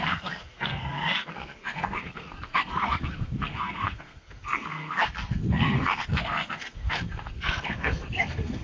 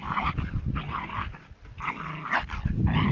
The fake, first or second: first